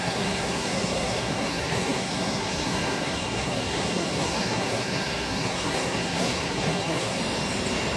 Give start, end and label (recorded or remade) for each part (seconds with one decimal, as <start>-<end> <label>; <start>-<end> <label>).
0.0-7.2 remade; 7.2-8.0 recorded